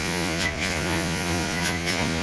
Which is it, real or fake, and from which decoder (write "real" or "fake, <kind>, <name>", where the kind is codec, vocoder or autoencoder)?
fake, vocoder, Vocos